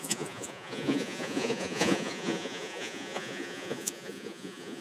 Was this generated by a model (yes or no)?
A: yes